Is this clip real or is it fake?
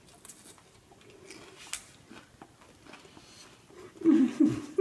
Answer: real